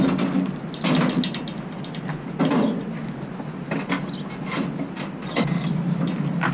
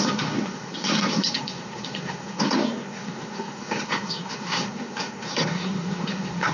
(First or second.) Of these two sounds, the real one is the first